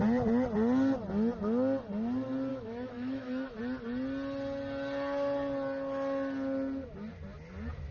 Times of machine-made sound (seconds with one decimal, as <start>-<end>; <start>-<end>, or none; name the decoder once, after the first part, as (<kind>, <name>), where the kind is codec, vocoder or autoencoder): 2.5-3.6 (autoencoder, DAC-VAE)